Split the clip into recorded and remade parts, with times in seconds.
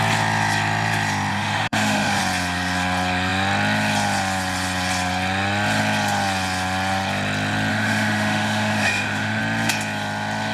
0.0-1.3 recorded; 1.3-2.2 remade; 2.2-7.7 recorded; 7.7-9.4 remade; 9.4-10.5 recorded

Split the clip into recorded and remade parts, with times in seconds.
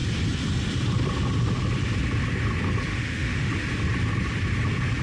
0.0-2.9 recorded; 2.9-3.5 remade; 3.5-5.0 recorded